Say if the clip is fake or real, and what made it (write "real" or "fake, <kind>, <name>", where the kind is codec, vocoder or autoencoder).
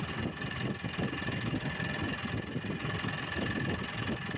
real